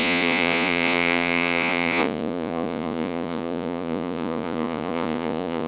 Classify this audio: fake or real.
fake